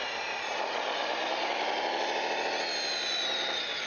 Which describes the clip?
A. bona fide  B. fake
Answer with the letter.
A